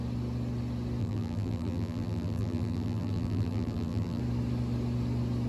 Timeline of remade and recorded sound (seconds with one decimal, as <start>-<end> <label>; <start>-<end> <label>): 0.0-1.0 recorded; 1.0-4.2 remade; 4.2-5.5 recorded